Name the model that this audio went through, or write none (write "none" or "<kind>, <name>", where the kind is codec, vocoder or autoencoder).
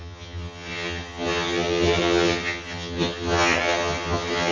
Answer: vocoder, HiFi-GAN